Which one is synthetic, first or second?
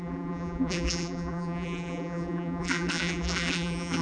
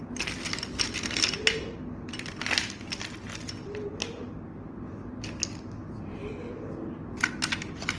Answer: first